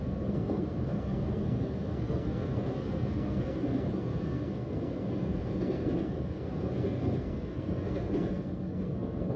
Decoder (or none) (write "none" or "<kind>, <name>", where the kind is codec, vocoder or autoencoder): codec, SNAC